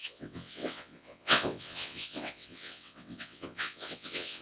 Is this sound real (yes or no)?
no